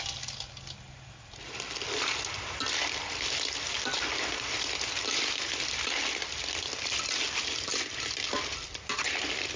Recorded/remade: recorded